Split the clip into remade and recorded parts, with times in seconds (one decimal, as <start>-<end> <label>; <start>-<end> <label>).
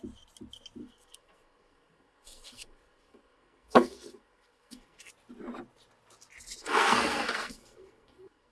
0.0-0.8 recorded; 0.8-5.1 remade; 5.1-6.6 recorded; 6.6-8.5 remade